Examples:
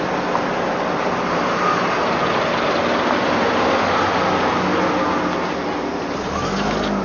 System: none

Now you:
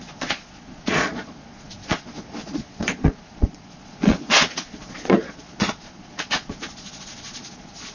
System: vocoder, Vocos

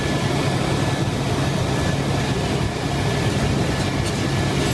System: none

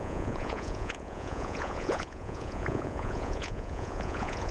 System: vocoder, Vocos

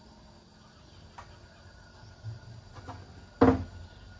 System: none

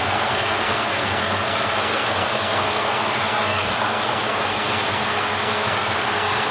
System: codec, SNAC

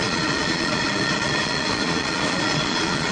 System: vocoder, Vocos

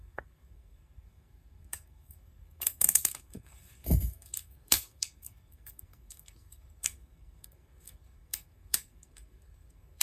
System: codec, SNAC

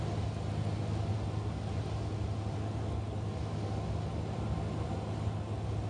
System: none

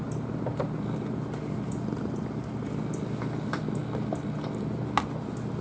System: none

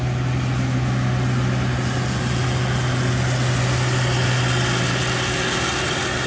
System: none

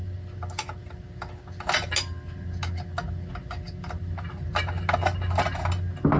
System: none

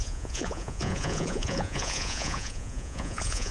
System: vocoder, Vocos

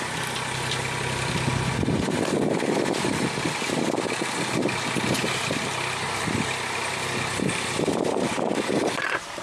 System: none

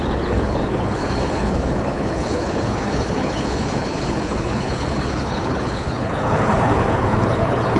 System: codec, HILCodec